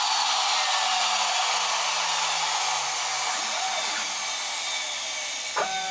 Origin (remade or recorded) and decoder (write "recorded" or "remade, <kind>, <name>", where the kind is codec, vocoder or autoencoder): recorded